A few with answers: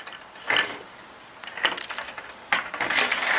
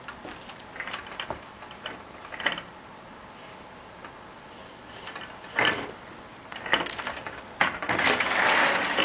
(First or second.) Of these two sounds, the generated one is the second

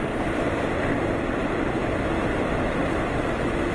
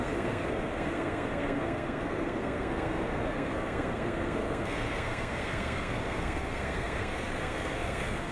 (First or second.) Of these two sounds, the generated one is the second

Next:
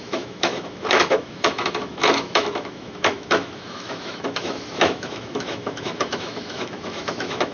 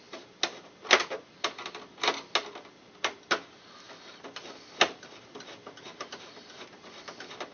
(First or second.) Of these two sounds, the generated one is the first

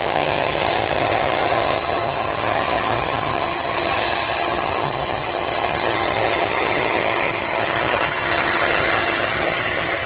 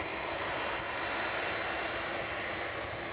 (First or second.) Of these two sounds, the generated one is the first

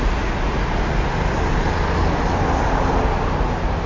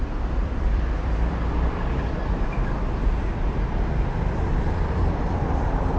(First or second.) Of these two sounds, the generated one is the second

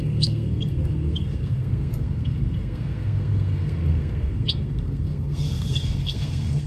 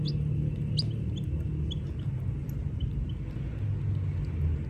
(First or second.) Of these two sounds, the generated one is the first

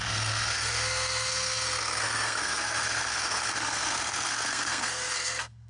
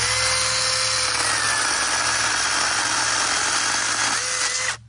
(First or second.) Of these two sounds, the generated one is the first